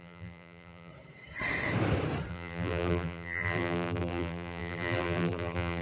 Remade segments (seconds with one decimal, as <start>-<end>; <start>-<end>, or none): 0.0-0.9; 2.3-5.8